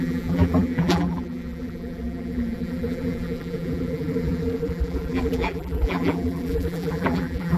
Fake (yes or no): yes